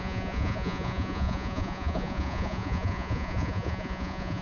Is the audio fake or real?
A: fake